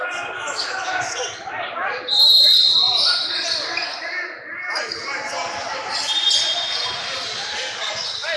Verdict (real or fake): real